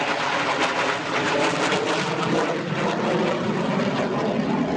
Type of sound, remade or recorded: recorded